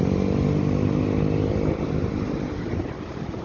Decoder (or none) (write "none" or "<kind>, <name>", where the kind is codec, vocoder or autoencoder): none